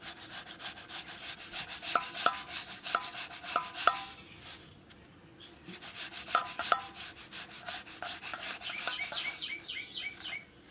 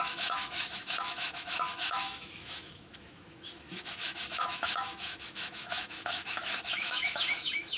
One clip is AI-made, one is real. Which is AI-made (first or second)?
second